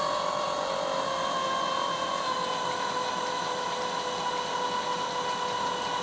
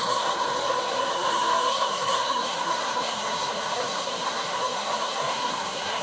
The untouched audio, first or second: first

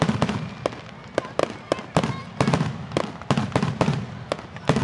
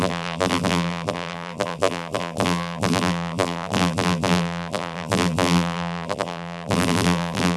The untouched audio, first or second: first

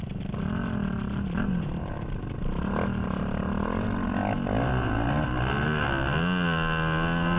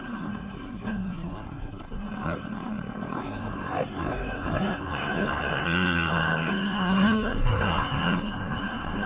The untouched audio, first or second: first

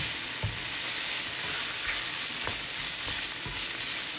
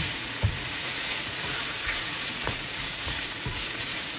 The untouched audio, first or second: first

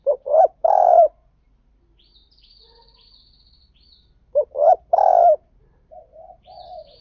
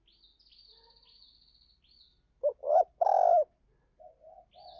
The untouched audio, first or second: second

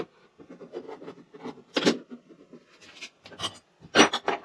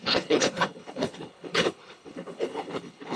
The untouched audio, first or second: first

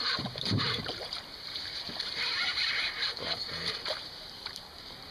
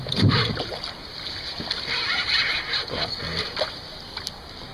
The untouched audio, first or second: second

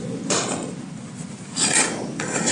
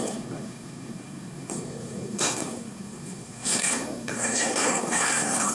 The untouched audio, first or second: first